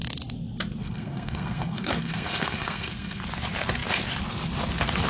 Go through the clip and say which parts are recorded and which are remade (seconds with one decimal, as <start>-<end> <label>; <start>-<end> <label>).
0.0-0.8 recorded; 0.8-3.2 remade; 3.2-5.1 recorded